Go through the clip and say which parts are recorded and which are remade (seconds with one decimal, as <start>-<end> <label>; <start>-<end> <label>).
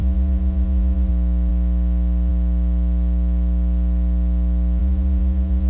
0.0-1.1 remade; 1.1-4.8 recorded; 4.8-5.7 remade